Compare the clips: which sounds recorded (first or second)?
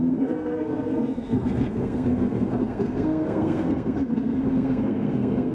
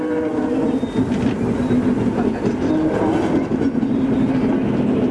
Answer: second